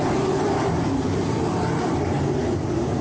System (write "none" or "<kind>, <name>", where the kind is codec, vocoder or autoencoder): vocoder, BigVGAN v2